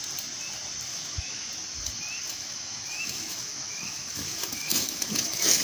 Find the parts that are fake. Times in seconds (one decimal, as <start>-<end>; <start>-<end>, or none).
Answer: 0.9-1.5; 2.3-5.6